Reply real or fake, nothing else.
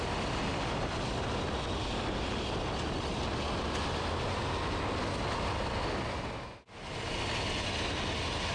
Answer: real